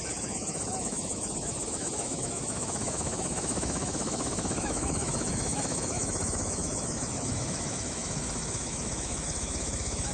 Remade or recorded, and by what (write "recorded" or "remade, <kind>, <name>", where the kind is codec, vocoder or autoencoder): remade, autoencoder, DAC-VAE